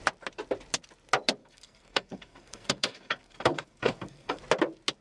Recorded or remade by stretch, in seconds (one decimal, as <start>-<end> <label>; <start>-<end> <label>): 0.0-1.4 recorded; 1.4-4.4 remade; 4.4-5.0 recorded